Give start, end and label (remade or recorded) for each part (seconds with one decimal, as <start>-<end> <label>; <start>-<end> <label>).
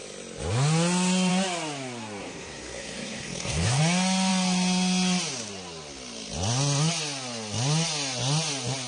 0.0-2.2 recorded; 2.2-3.8 remade; 3.8-8.9 recorded